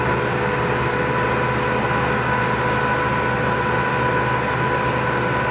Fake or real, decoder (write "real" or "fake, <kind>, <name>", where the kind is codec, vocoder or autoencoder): real